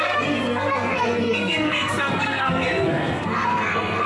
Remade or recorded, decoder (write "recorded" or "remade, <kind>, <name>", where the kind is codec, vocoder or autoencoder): remade, codec, SNAC